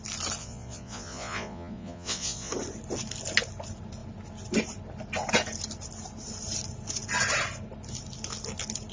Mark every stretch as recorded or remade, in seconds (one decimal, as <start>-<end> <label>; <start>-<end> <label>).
0.0-0.4 recorded; 0.4-2.5 remade; 2.5-8.9 recorded